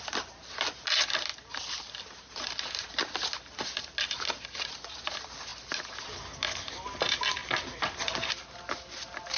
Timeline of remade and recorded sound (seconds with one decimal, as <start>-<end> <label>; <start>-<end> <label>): 0.0-9.4 recorded